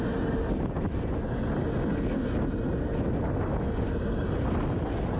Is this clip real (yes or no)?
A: yes